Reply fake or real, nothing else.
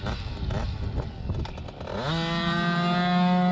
real